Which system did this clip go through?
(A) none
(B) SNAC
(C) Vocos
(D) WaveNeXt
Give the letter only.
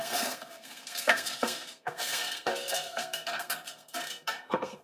B